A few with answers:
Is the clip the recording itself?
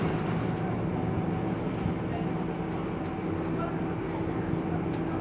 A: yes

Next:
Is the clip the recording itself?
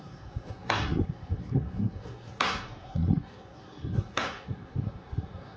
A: no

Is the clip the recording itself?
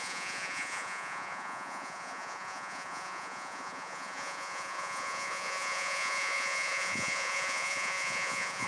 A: no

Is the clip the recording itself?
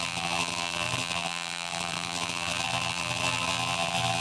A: no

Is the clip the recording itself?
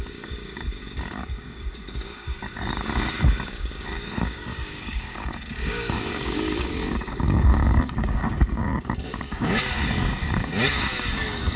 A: no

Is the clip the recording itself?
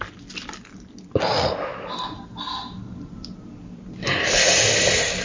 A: yes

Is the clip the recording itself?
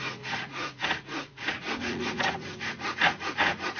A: no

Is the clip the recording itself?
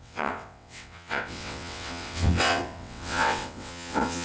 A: no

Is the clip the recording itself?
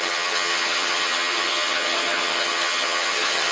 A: no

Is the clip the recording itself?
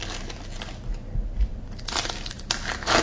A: yes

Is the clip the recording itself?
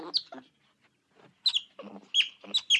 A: yes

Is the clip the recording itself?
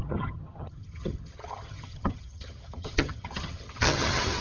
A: no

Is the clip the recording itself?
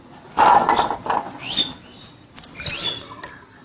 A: yes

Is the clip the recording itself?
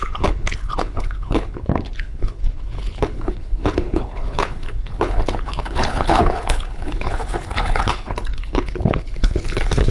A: no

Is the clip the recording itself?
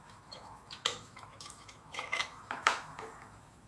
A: no